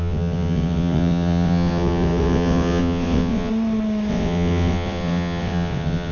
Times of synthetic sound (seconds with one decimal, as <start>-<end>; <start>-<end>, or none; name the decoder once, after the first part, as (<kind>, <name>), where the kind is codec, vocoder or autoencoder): 0.0-3.5 (vocoder, WaveNeXt); 4.1-6.1